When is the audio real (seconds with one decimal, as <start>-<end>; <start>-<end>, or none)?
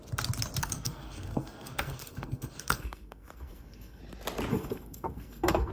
0.0-0.6; 4.0-4.5